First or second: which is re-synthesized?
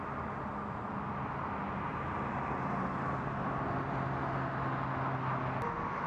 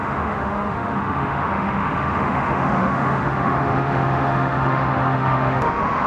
second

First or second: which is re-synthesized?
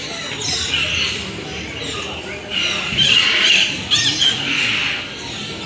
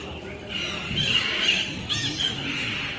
second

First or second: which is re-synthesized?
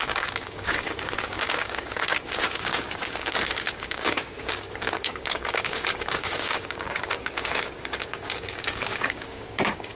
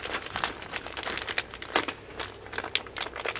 first